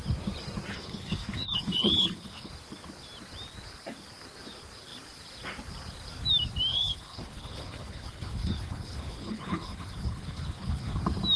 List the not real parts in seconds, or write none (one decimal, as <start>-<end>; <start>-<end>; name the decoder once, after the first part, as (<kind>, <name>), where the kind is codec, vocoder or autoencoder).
0.7-2.5 (codec, HILCodec); 6.7-11.0